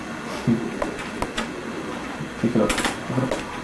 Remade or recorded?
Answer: recorded